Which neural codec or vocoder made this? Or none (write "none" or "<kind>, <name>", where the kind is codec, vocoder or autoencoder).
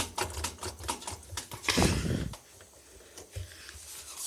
none